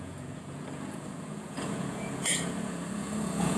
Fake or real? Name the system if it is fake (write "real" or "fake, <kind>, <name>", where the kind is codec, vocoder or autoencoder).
fake, vocoder, Vocos